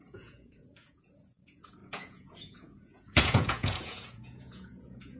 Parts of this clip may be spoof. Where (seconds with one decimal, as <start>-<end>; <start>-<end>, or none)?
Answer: 0.0-5.2